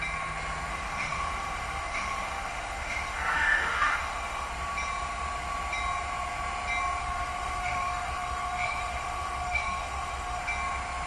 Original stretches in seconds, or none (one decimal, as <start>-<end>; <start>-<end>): 0.0-0.7; 4.5-7.0; 10.4-11.1